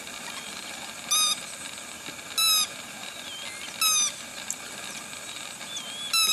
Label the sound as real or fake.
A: real